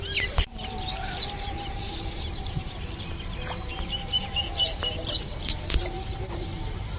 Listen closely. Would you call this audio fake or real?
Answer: fake